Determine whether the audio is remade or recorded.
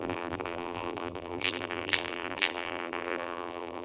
remade